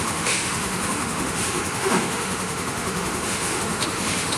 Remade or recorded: remade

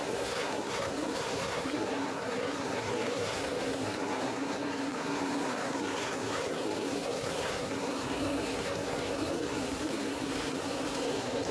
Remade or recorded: remade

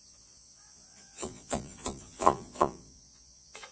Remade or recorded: remade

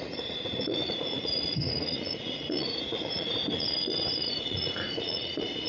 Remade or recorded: remade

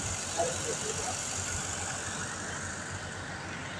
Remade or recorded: recorded